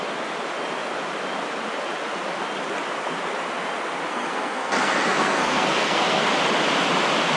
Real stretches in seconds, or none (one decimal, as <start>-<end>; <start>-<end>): 0.0-4.1; 6.3-7.4